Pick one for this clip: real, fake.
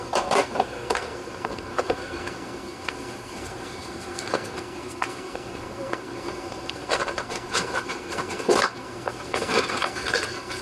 fake